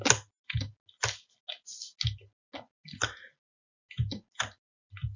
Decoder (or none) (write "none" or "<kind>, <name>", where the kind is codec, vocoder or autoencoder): none